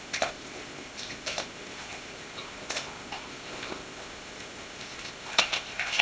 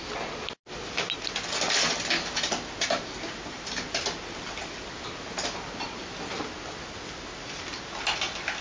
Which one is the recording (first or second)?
second